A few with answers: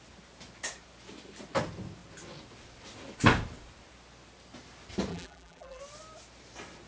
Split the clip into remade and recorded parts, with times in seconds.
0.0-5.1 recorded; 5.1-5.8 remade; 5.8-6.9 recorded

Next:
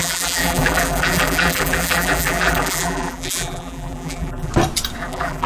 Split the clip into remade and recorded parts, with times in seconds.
0.0-4.5 remade; 4.5-5.0 recorded; 5.0-5.5 remade